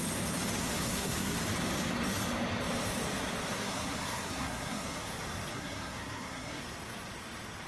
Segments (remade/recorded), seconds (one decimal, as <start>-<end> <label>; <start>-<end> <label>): 0.0-0.6 recorded; 0.6-1.4 remade; 1.4-3.5 recorded; 3.5-5.1 remade; 5.1-5.5 recorded; 5.5-6.6 remade; 6.6-7.7 recorded